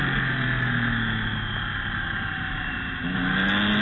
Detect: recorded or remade recorded